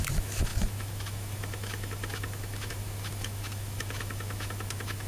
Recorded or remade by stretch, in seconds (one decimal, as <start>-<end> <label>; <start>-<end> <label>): 0.0-5.1 remade